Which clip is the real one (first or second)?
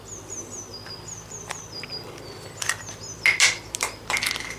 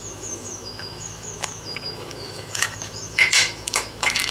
first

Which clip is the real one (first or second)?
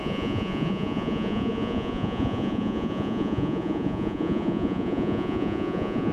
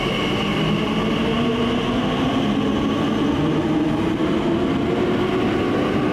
second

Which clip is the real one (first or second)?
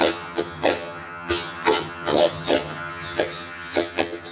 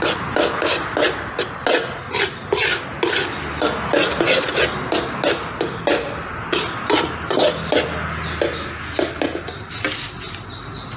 second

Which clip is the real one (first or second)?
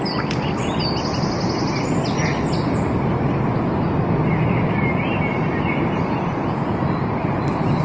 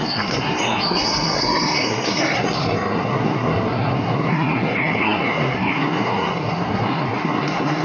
first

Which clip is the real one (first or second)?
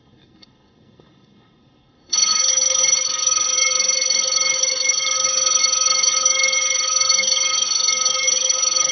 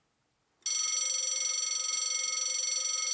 second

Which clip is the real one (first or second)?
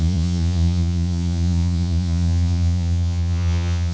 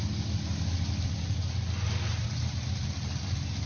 second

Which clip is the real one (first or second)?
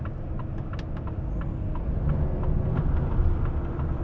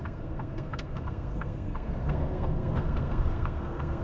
first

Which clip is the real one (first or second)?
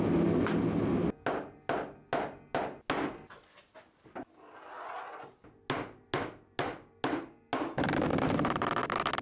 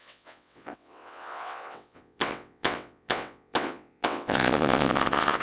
first